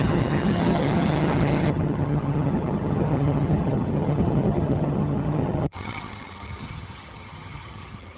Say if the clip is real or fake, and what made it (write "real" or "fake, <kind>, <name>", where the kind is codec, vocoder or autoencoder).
fake, vocoder, HiFi-GAN